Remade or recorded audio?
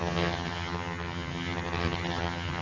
remade